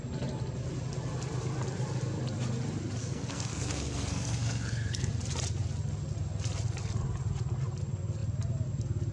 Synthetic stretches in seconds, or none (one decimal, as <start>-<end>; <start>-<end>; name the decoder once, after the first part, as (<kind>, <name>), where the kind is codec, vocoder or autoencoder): 3.0-5.1 (codec, SNAC)